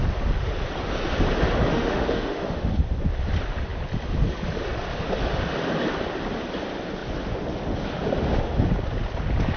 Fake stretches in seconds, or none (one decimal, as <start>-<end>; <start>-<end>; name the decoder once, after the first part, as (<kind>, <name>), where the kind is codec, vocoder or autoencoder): 1.7-2.7 (autoencoder, DAC-VAE)